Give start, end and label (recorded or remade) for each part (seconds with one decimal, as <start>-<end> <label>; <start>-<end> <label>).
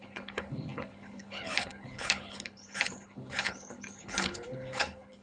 0.0-5.2 remade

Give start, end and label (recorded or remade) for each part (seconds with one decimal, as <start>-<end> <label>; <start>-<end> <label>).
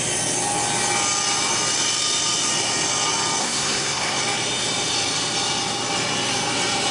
0.0-3.4 recorded; 3.4-4.2 remade; 4.2-6.9 recorded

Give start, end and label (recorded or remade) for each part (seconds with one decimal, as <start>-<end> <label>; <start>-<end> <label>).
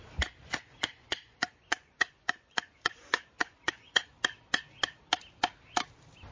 0.0-0.4 recorded; 0.4-4.1 remade; 4.1-6.3 recorded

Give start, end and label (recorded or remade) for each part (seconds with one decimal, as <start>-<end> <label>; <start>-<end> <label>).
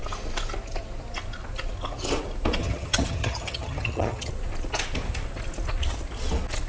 0.0-2.6 recorded; 2.6-4.3 remade; 4.3-6.7 recorded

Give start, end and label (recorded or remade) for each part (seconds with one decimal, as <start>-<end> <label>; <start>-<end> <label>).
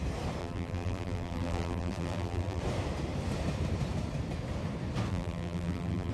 0.0-0.4 recorded; 0.4-2.6 remade; 2.6-5.1 recorded; 5.1-6.1 remade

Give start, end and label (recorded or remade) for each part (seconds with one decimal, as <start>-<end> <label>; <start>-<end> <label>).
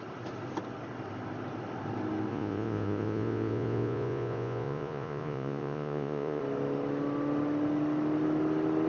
0.0-2.3 recorded; 2.3-6.4 remade; 6.4-8.9 recorded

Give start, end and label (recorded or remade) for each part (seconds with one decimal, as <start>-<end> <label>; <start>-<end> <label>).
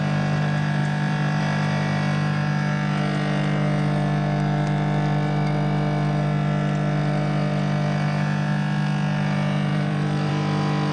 0.0-0.8 recorded; 0.8-1.4 remade; 1.4-9.7 recorded; 9.7-10.3 remade; 10.3-10.9 recorded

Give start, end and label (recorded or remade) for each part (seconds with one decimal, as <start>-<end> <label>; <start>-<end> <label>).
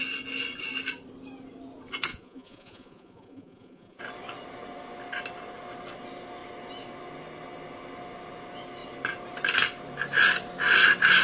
0.0-2.1 recorded; 2.1-4.0 remade; 4.0-11.2 recorded